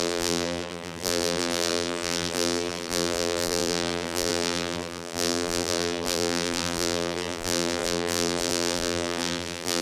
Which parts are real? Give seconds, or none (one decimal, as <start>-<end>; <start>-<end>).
none